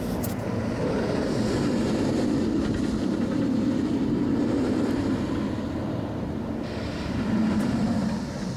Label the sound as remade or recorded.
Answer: recorded